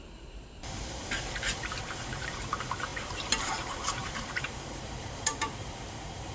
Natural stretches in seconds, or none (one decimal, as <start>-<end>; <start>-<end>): none